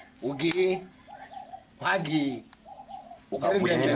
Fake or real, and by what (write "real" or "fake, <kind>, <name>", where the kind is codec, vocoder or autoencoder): real